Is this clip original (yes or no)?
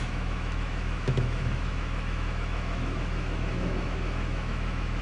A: no